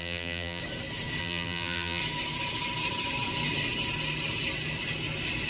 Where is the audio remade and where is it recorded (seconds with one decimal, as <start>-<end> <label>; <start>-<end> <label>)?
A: 0.0-0.6 remade; 0.6-1.2 recorded; 1.2-2.0 remade; 2.0-5.5 recorded